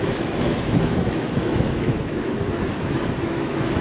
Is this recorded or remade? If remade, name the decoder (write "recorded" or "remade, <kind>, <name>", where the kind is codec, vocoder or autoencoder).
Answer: remade, autoencoder, DAC-VAE